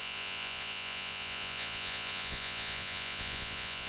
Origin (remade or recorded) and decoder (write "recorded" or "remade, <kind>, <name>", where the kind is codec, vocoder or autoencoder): remade, vocoder, Vocos